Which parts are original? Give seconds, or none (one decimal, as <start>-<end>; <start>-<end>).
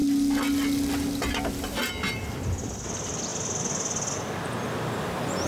0.0-5.5